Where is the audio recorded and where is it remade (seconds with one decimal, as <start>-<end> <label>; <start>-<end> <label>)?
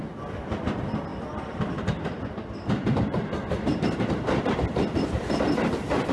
0.0-6.1 recorded